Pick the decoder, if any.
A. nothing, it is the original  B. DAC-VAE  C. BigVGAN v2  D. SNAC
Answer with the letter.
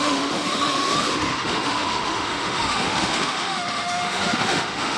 B